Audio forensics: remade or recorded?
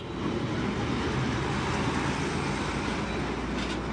recorded